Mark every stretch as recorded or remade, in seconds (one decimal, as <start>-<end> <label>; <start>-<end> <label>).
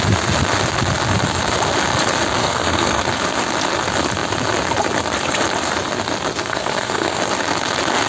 0.0-2.4 recorded; 2.4-3.0 remade; 3.0-6.3 recorded; 6.3-7.2 remade; 7.2-8.1 recorded